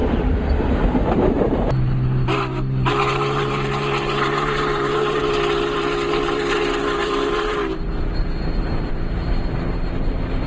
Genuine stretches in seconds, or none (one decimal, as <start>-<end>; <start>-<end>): 5.2-10.5